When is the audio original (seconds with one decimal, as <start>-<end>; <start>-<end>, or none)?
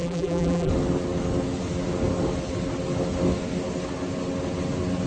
0.7-5.1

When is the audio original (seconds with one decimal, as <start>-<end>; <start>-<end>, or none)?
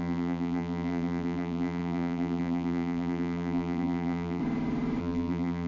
4.4-5.0